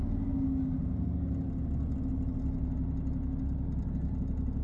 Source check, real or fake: real